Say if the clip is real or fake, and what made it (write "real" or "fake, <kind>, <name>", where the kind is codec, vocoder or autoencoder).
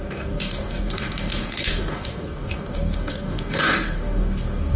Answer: fake, codec, DAC